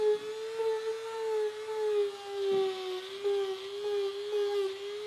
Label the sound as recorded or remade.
recorded